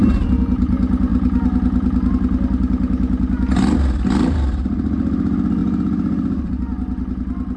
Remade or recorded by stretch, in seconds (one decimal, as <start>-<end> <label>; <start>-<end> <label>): 0.0-5.6 recorded; 5.6-6.5 remade; 6.5-7.6 recorded